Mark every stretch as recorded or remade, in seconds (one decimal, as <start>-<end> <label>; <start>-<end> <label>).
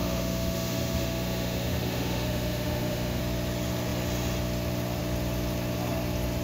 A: 0.0-3.2 remade; 3.2-6.4 recorded